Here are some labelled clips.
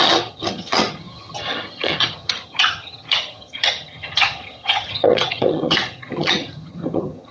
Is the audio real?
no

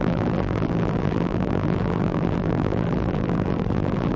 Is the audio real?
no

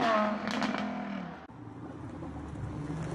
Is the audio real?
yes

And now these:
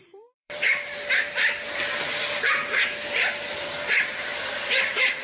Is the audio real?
no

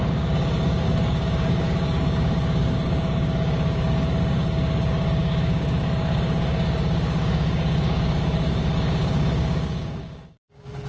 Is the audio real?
no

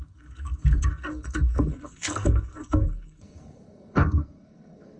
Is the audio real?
no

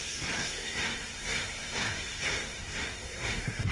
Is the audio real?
no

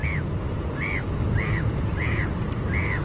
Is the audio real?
yes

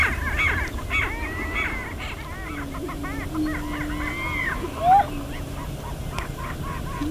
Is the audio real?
yes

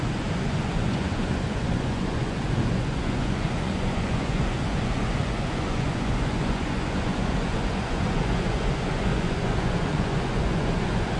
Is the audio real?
no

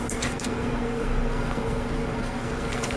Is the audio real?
no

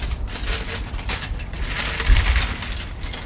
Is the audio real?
yes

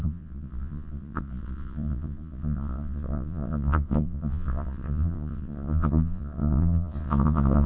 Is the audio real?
no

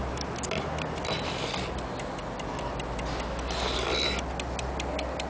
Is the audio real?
yes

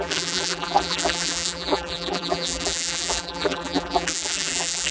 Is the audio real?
no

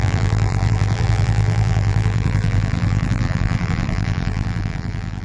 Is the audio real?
no